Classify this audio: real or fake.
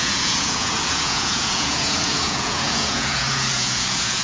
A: fake